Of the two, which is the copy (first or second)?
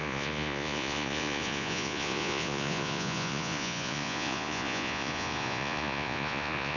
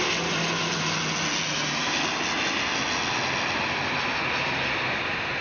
first